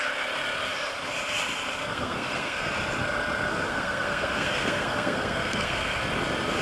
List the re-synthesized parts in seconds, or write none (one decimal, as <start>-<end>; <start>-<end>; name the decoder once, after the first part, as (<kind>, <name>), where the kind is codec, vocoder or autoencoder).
1.9-2.7 (codec, SNAC); 3.5-6.0